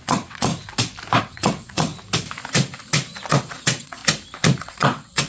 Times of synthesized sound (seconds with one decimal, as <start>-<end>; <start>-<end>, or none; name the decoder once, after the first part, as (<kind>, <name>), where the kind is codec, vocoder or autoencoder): 0.0-0.5 (vocoder, WaveNeXt); 1.2-1.9; 3.4-4.0; 4.6-5.3